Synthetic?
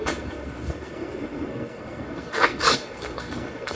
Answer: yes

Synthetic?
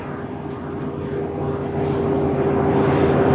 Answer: no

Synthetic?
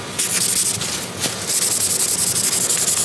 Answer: no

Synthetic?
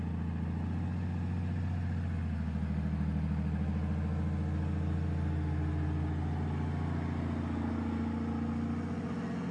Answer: no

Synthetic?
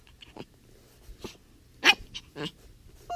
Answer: no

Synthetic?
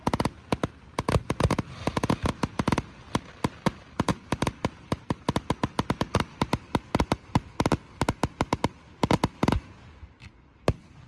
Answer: no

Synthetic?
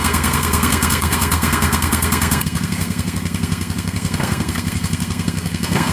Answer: yes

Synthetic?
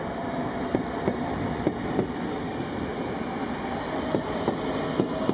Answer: no